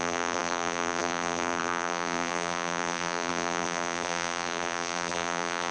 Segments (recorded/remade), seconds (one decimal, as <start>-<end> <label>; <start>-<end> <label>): 0.0-5.7 remade